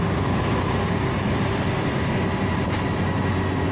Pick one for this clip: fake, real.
real